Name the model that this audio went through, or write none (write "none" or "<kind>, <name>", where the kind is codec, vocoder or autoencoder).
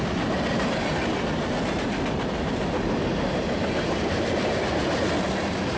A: none